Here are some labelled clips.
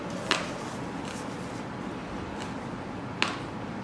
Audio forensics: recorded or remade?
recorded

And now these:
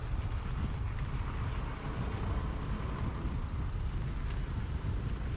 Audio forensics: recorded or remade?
recorded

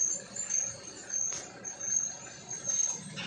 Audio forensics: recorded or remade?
recorded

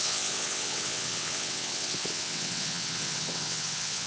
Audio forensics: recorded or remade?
remade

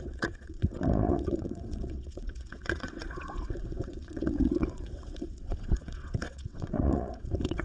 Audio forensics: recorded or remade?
remade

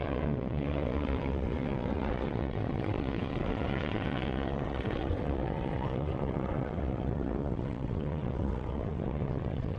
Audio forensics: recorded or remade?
remade